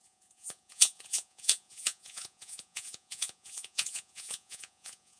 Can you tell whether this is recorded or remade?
remade